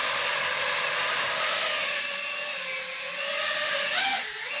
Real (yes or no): yes